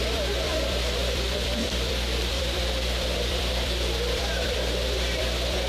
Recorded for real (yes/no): no